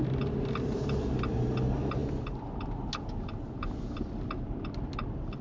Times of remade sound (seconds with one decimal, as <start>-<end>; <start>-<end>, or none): none